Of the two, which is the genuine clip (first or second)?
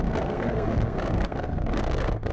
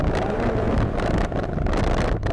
second